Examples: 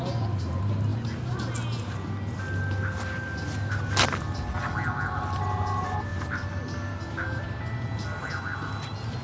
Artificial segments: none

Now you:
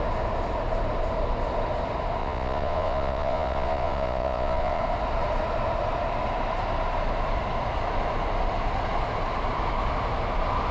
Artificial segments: 2.2-4.8

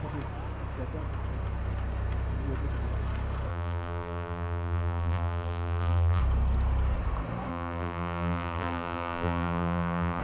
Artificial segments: 3.5-6.2; 7.5-10.2

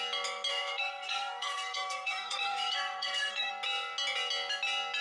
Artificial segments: 0.5-3.5

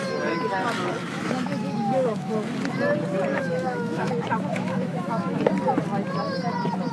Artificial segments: 1.0-2.3; 3.3-4.1; 4.5-5.4

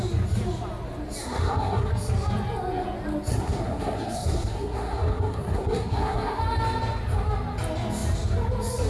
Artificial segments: 1.2-1.9; 3.3-6.4